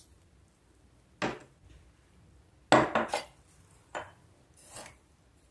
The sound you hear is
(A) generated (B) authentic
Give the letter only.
B